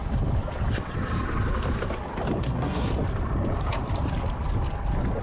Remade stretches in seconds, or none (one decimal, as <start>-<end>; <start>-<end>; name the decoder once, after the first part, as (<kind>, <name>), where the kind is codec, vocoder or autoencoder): 2.4-2.9 (codec, SNAC)